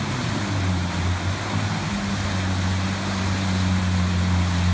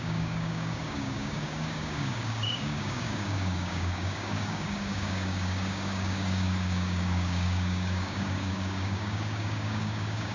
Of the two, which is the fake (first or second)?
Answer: second